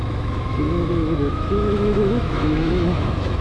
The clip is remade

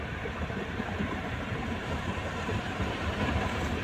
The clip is remade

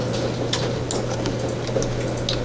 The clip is recorded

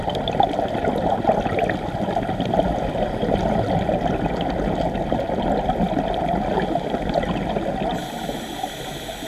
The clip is recorded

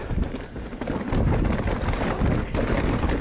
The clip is recorded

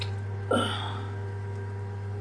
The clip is recorded